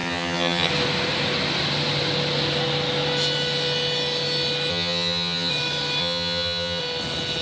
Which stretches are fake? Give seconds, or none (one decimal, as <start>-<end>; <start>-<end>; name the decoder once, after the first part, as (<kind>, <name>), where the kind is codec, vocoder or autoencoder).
0.0-0.7 (vocoder, HiFi-GAN); 4.7-5.5; 6.0-6.8